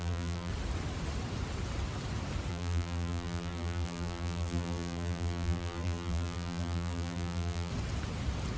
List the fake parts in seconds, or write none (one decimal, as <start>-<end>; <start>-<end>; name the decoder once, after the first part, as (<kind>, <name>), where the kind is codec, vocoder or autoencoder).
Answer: 0.0-0.5 (vocoder, BigVGAN v2); 2.5-7.7

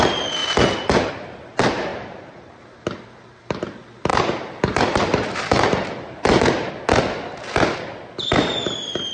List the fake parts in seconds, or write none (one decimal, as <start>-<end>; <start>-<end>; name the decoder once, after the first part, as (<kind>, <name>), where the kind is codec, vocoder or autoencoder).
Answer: 1.9-2.6 (vocoder, BigVGAN v2); 4.1-6.7

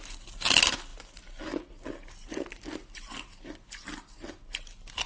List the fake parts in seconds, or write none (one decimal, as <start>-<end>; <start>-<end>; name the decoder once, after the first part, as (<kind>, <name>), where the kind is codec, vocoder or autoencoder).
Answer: none